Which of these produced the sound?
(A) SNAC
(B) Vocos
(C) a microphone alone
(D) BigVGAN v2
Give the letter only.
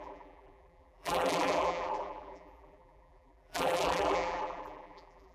D